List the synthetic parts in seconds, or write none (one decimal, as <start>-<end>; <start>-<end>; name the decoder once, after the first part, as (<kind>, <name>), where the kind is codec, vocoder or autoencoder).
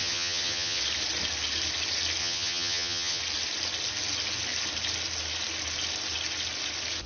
0.0-0.8 (vocoder, HiFi-GAN); 2.2-3.2